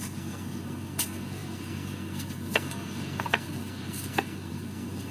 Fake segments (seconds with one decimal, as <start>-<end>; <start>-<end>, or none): 0.0-5.1